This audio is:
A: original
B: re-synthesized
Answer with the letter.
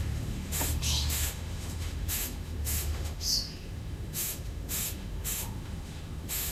B